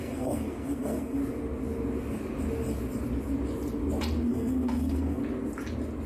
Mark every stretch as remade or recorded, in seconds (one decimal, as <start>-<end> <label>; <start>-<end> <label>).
0.0-1.2 remade; 1.2-4.3 recorded; 4.3-5.2 remade; 5.2-6.1 recorded